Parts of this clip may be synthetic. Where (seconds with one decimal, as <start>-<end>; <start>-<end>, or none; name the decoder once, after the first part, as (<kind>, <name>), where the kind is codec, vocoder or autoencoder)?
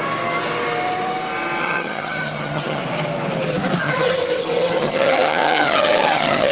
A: 1.6-2.8 (vocoder, HiFi-GAN); 3.8-6.5